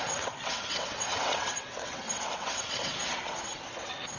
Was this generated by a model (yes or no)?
yes